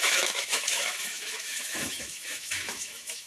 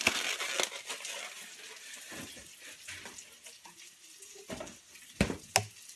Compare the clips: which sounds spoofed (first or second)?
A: first